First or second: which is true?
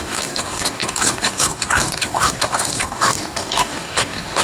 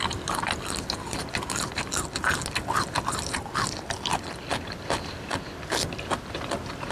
second